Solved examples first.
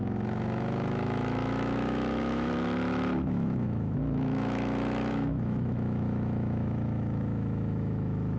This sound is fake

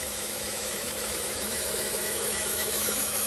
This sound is fake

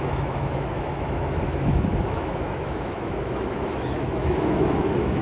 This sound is fake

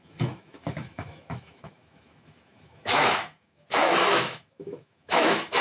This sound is fake